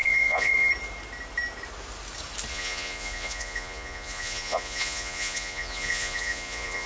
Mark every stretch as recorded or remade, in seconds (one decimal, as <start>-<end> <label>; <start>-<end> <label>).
0.0-0.7 remade; 0.7-2.5 recorded; 2.5-6.9 remade